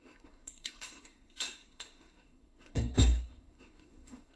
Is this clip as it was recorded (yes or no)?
no